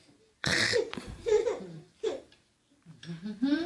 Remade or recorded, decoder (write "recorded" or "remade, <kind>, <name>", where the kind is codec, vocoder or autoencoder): remade, vocoder, BigVGAN v2